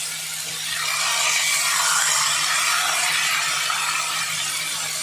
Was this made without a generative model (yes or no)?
yes